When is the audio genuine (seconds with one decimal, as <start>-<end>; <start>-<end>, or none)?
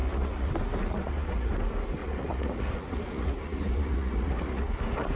0.5-1.0; 1.5-2.0; 4.7-5.2